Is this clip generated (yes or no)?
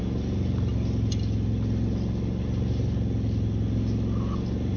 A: no